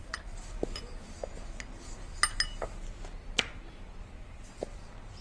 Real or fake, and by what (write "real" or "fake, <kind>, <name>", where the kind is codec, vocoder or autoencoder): real